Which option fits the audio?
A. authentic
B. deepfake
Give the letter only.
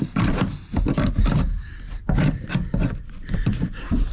A